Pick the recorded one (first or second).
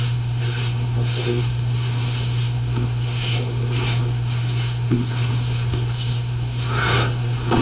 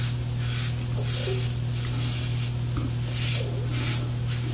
second